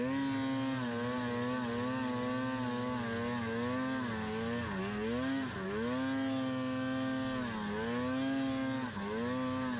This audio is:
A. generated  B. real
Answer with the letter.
B